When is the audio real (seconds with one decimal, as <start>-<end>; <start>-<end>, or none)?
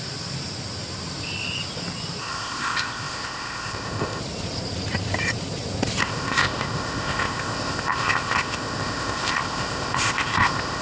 0.0-2.2; 4.2-6.0